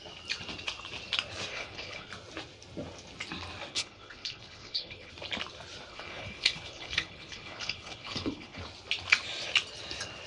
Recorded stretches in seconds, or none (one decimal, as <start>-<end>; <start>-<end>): 0.0-1.5; 2.1-3.7; 5.1-5.9; 8.6-10.3